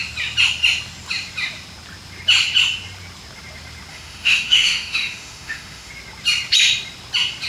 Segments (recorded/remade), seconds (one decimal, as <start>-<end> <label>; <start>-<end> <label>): 0.0-3.9 recorded; 3.9-5.9 remade; 5.9-7.5 recorded